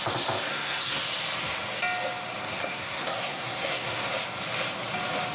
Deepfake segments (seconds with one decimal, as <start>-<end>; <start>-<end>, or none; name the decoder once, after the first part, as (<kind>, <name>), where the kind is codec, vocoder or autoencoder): 0.5-1.0 (codec, SNAC); 2.4-4.1